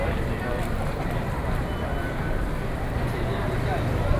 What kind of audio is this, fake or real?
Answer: real